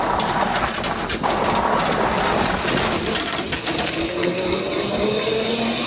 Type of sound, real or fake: real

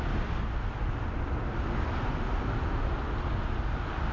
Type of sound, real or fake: real